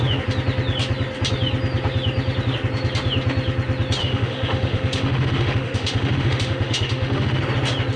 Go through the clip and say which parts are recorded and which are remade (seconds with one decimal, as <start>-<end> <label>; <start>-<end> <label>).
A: 0.0-4.0 recorded; 4.0-7.4 remade; 7.4-8.0 recorded